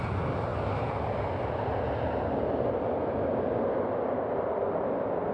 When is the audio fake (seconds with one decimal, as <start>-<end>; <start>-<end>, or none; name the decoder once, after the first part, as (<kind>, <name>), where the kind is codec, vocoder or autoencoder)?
none